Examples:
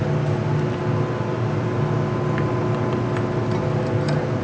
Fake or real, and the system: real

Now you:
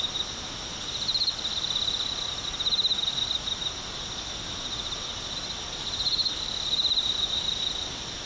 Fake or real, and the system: real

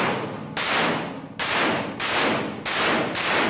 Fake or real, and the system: real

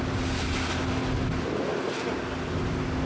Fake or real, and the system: real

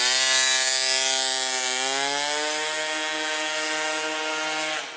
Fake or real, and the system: real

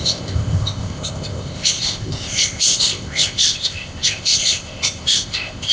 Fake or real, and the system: fake, codec, ZipCodec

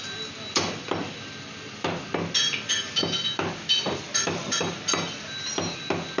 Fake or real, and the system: real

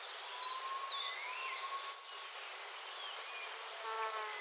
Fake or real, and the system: real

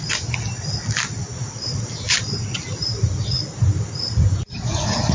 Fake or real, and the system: real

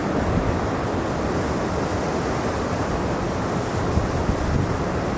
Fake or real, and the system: real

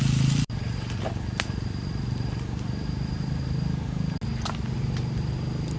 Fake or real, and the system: real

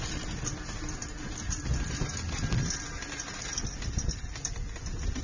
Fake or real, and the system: real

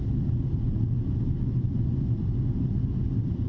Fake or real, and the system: real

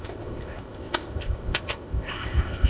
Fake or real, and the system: fake, codec, ZipCodec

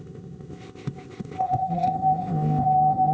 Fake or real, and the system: fake, codec, ZipCodec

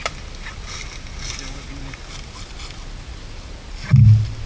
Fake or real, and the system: real